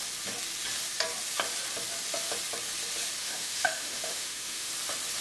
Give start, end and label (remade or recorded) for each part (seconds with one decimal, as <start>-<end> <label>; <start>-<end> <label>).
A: 0.0-3.2 recorded; 3.2-4.7 remade; 4.7-5.2 recorded